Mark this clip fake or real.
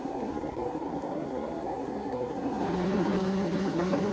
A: fake